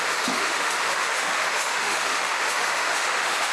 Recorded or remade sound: remade